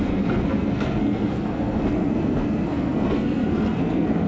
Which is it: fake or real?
fake